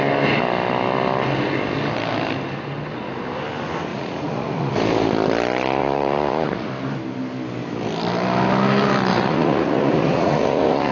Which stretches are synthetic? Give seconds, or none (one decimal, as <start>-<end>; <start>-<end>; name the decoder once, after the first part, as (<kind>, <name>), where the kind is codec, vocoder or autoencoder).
3.9-4.7 (vocoder, Vocos); 5.8-6.7; 9.1-10.9